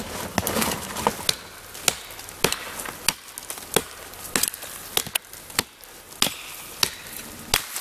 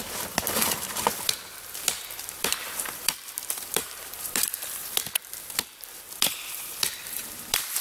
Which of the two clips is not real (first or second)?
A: second